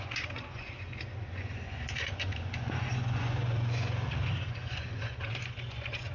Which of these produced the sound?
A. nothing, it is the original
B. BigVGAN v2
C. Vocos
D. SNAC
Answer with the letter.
C